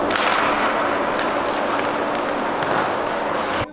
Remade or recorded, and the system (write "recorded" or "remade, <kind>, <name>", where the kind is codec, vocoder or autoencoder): recorded